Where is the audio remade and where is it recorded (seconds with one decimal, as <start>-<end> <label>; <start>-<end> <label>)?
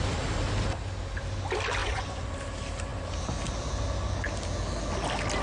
0.0-1.8 recorded; 1.8-2.3 remade; 2.3-5.4 recorded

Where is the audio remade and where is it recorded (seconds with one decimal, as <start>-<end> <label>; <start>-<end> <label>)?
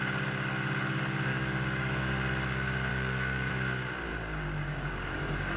0.0-1.3 recorded; 1.3-2.1 remade; 2.1-2.9 recorded; 2.9-3.5 remade; 3.5-4.1 recorded; 4.1-5.6 remade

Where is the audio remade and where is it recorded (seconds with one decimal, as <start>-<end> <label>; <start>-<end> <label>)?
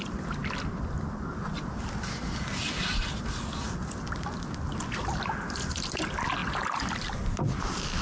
0.0-0.4 recorded; 0.4-1.5 remade; 1.5-2.2 recorded; 2.2-2.9 remade; 2.9-6.4 recorded; 6.4-8.0 remade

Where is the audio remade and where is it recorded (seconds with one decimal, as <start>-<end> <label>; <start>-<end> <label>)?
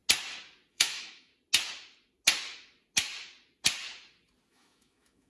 0.0-0.7 recorded; 0.7-1.3 remade; 1.3-4.5 recorded; 4.5-5.3 remade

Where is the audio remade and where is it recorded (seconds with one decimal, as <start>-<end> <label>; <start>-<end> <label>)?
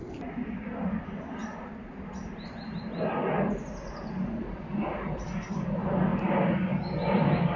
0.0-7.6 recorded